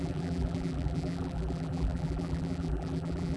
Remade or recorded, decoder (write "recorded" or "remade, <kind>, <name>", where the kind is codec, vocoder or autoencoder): remade, vocoder, BigVGAN v2